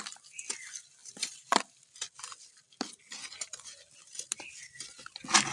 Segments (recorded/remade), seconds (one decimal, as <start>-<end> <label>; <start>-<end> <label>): 0.0-5.5 recorded